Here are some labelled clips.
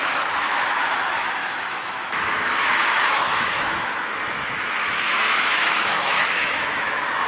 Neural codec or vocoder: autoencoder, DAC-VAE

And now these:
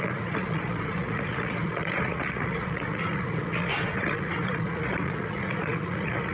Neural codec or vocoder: vocoder, Vocos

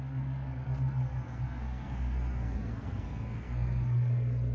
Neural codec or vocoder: codec, SNAC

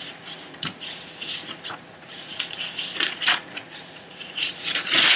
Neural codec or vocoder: vocoder, Vocos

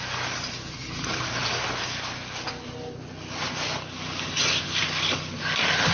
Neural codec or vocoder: none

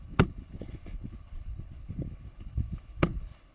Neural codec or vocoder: codec, HILCodec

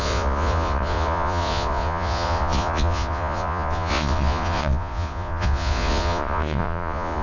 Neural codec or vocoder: vocoder, Vocos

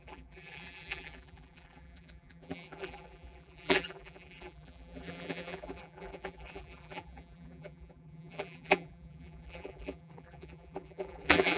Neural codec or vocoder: vocoder, BigVGAN v2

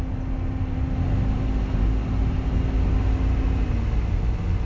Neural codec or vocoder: none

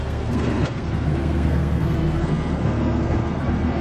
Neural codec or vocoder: codec, SNAC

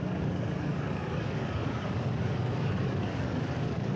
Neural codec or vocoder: codec, DAC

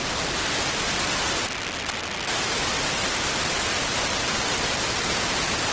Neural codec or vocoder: none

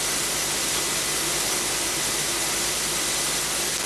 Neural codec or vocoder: none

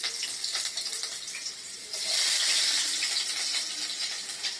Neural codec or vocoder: none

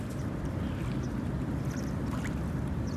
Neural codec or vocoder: none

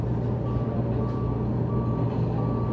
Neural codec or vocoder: none